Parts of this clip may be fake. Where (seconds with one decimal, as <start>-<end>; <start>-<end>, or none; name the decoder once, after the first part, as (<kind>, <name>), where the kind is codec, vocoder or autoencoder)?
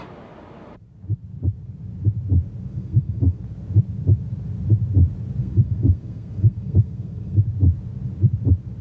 2.7-3.4 (codec, SNAC); 5.4-7.4